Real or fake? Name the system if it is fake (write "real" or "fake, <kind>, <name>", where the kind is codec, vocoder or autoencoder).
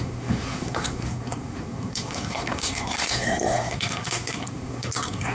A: fake, codec, SNAC